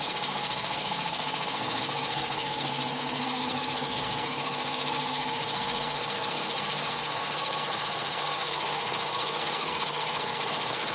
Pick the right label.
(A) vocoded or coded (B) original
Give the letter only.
A